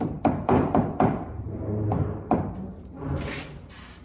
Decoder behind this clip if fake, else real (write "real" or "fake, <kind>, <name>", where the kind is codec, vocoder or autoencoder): fake, vocoder, BigVGAN v2